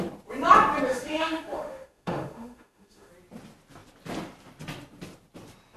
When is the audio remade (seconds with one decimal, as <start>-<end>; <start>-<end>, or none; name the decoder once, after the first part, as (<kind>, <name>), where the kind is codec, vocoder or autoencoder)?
0.9-3.1 (autoencoder, DAC-VAE)